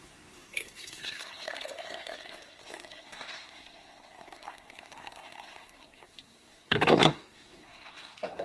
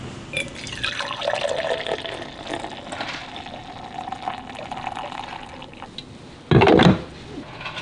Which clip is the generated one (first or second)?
first